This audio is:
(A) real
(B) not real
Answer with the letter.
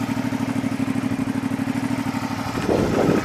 A